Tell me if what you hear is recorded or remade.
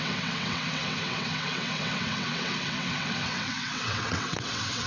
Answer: remade